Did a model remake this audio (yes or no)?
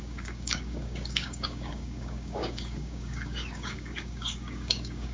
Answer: yes